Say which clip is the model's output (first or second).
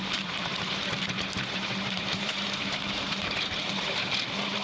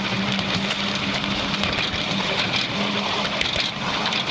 first